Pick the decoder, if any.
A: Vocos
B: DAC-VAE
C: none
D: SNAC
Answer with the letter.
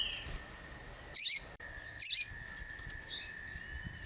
C